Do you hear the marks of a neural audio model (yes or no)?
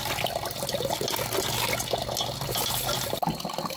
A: no